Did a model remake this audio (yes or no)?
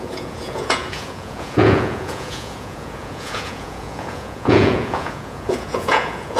yes